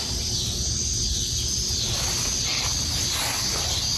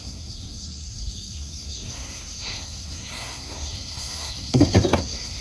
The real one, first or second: first